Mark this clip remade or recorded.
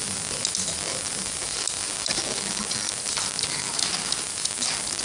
recorded